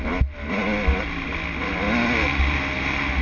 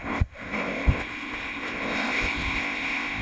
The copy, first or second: second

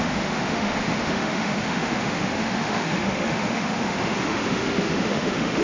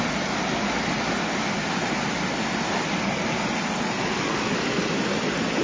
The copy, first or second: first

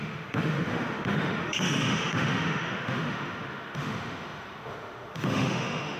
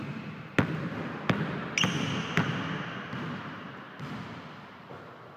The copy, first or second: first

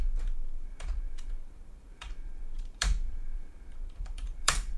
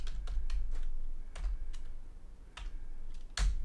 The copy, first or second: first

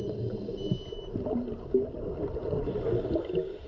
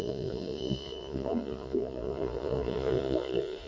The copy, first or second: second